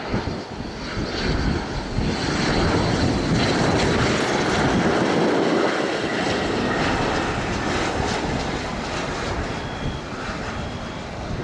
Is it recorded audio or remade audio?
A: recorded